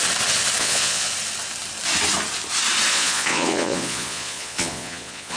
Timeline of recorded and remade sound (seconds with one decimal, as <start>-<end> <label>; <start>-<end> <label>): 0.0-0.6 recorded; 0.6-1.1 remade; 1.1-2.9 recorded; 2.9-5.4 remade